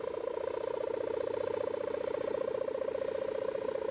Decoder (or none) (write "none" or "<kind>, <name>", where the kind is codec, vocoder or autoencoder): none